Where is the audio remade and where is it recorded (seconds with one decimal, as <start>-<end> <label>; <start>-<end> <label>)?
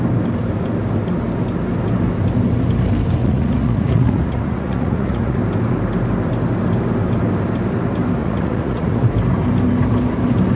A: 0.0-3.2 recorded; 3.2-5.4 remade; 5.4-8.2 recorded; 8.2-9.1 remade; 9.1-10.6 recorded